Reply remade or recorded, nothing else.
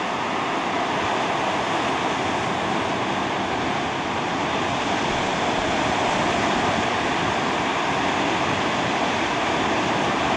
recorded